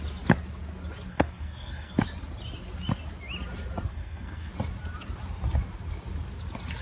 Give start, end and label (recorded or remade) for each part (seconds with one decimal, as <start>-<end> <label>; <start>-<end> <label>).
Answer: 0.0-1.1 recorded; 1.1-1.9 remade; 1.9-3.9 recorded; 3.9-4.5 remade; 4.5-6.8 recorded